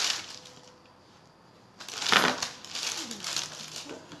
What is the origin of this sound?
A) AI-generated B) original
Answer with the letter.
B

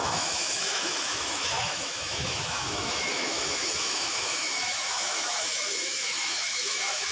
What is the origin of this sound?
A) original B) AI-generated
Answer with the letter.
B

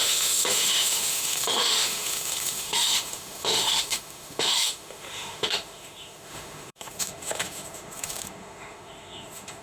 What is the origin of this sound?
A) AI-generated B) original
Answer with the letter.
A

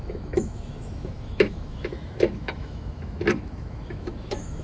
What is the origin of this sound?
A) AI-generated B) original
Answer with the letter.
A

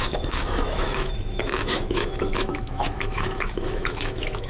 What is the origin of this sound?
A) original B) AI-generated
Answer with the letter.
B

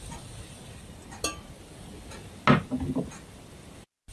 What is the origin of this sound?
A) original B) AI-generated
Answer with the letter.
A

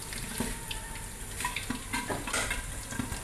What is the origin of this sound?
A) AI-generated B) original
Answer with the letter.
B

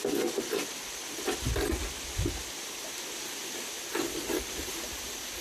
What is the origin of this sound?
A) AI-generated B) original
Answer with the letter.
B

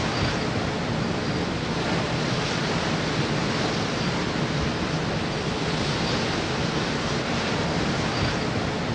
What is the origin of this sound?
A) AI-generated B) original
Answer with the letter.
B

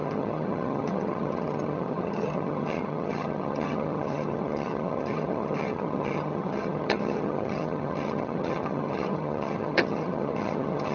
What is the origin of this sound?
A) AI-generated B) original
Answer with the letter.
A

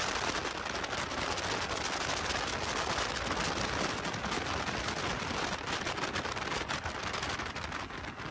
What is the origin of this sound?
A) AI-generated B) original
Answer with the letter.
B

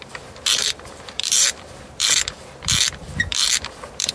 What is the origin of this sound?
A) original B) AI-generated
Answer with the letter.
B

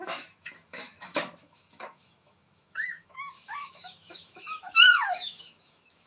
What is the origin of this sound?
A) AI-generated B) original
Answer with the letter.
A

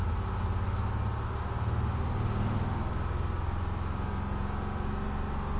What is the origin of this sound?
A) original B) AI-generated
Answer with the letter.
A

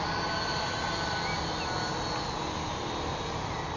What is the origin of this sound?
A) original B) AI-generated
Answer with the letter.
A